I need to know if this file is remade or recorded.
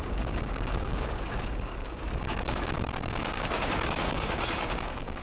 remade